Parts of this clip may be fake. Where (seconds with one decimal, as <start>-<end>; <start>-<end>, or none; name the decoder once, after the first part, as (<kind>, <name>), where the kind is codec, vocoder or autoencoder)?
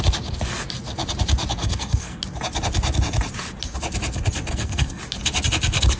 1.6-2.2 (codec, SNAC); 4.5-5.0